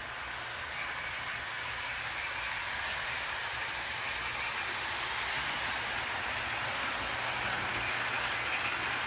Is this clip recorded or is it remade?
recorded